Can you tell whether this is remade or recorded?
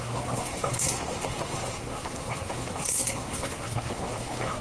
remade